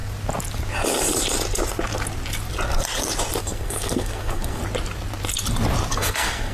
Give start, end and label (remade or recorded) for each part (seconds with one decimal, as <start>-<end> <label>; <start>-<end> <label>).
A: 0.0-3.4 recorded; 3.4-4.6 remade; 4.6-5.9 recorded; 5.9-6.5 remade